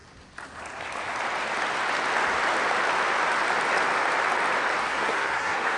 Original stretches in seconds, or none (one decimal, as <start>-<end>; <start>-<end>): 0.0-4.8